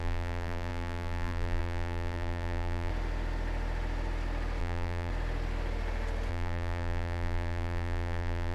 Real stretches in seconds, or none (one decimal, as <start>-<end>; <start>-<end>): 2.9-4.6; 5.1-6.3